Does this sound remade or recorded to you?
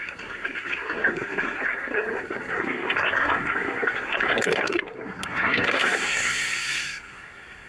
remade